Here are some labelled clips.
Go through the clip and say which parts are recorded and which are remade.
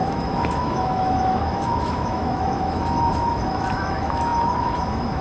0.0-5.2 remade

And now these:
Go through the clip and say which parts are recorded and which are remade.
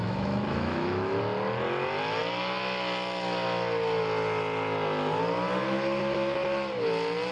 0.0-1.2 remade; 1.2-7.3 recorded